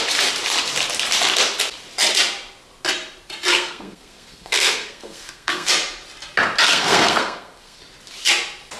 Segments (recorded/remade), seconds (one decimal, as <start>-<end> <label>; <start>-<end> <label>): 0.0-3.5 recorded; 3.5-5.7 remade; 5.7-6.7 recorded; 6.7-7.8 remade; 7.8-8.8 recorded